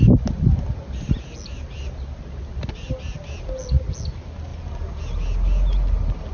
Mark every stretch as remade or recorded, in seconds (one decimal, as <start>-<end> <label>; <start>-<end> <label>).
0.0-6.3 recorded